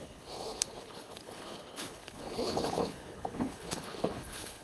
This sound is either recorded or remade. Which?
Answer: remade